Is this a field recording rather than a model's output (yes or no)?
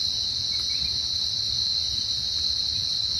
yes